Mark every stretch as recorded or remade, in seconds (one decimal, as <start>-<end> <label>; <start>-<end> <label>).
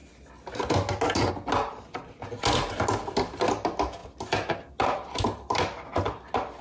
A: 0.0-6.6 recorded